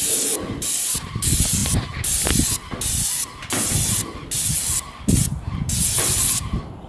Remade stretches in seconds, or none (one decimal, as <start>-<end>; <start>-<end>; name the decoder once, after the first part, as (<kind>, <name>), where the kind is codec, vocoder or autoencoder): none